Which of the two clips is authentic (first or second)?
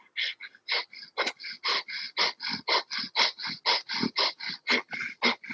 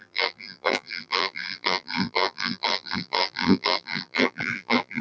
first